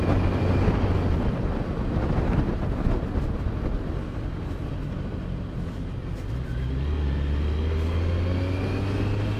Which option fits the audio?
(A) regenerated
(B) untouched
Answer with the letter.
B